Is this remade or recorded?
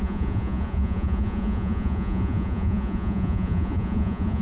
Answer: remade